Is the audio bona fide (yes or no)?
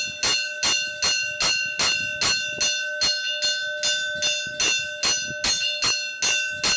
yes